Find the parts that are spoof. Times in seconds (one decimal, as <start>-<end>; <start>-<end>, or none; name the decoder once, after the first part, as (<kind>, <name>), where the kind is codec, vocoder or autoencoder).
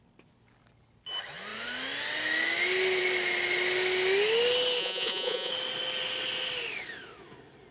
4.8-5.5 (vocoder, Vocos)